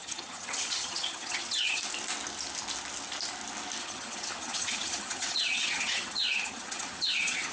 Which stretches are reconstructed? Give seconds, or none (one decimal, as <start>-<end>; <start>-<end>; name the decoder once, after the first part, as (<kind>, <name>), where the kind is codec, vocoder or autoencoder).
0.0-1.8 (vocoder, HiFi-GAN); 3.8-7.5